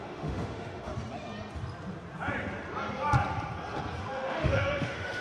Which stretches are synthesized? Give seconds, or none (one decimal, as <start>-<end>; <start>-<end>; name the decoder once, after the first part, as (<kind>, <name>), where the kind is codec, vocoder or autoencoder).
0.0-0.9 (autoencoder, DAC-VAE); 4.0-5.2